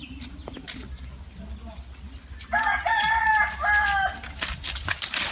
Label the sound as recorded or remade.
recorded